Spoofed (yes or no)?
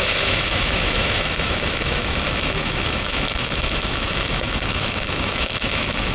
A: yes